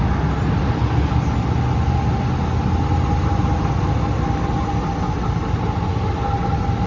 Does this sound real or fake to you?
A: real